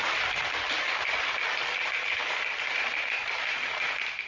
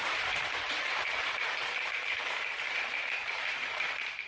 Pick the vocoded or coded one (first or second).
second